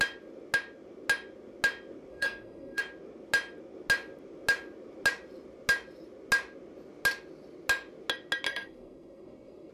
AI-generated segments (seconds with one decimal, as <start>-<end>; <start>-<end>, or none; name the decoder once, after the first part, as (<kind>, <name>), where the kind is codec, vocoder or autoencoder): 2.1-2.8 (codec, SNAC); 8.5-9.7